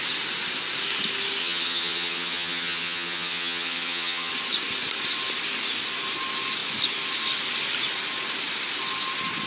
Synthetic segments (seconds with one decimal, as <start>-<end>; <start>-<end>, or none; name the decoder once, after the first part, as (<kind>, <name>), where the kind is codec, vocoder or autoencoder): 1.4-4.3 (vocoder, HiFi-GAN)